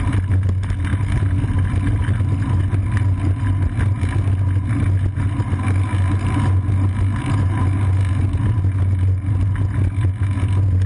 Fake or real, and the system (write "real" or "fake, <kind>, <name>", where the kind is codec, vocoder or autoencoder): real